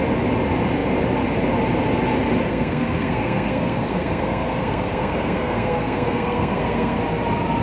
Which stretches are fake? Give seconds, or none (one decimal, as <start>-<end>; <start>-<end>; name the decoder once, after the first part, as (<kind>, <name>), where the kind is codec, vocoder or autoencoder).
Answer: 2.5-7.0 (codec, SNAC)